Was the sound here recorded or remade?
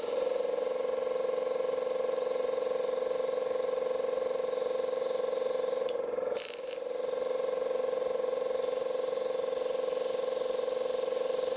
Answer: remade